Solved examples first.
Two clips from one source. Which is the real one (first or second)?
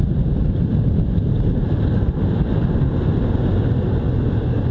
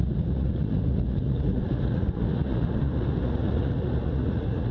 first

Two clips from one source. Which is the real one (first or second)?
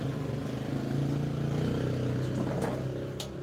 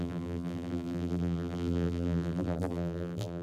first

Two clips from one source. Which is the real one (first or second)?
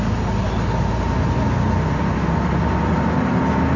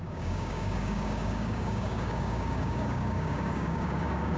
first